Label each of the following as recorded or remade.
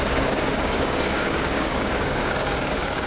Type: remade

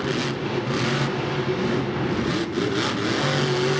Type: recorded